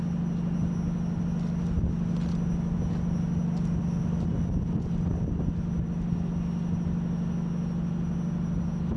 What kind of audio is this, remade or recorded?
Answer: recorded